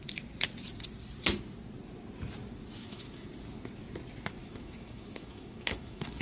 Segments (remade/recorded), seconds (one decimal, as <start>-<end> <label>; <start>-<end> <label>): 0.0-2.8 recorded; 2.8-3.3 remade; 3.3-4.4 recorded; 4.4-6.2 remade